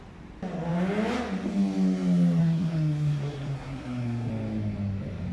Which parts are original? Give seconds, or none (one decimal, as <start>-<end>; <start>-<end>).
0.0-2.4; 4.3-5.3